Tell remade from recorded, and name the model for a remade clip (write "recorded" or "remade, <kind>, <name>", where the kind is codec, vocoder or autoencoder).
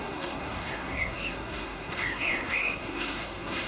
remade, codec, SNAC